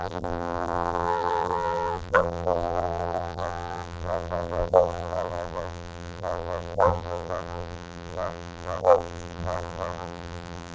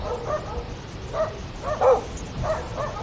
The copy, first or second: first